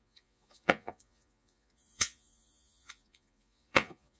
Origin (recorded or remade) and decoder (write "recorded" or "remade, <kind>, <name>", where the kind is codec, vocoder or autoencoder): remade, vocoder, Vocos